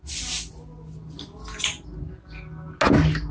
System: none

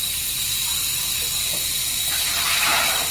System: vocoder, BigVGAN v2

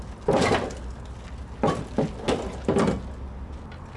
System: none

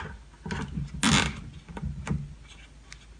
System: none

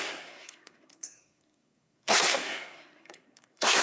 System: codec, SNAC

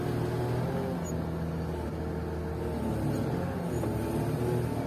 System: none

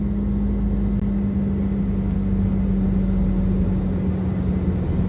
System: none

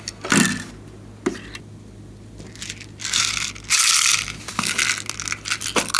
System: none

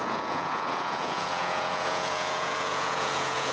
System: vocoder, Vocos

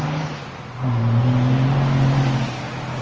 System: none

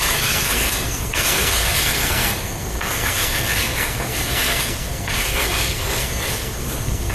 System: codec, SNAC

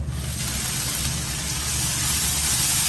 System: none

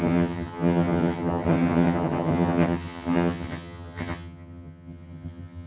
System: vocoder, HiFi-GAN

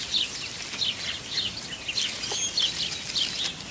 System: none